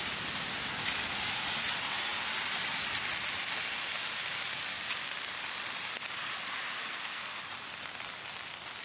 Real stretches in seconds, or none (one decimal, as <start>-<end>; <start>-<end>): 0.0-6.8; 7.4-8.8